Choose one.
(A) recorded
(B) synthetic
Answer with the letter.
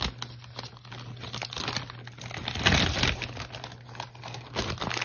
A